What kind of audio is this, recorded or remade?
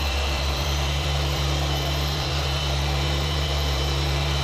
remade